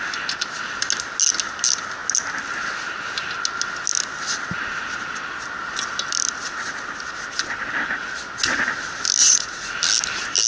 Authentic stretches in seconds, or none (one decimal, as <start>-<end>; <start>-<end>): 0.0-9.2; 9.7-10.5

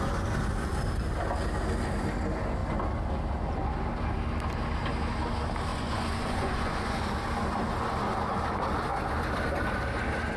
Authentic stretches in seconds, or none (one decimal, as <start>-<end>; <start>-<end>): 0.0-5.7; 7.1-10.4

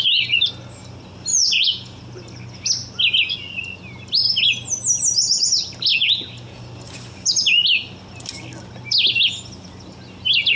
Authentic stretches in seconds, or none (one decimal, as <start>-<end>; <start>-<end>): 0.0-1.3; 2.0-5.9; 6.6-10.6

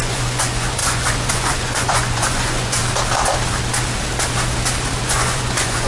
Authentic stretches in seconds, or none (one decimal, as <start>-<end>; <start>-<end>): 2.8-5.0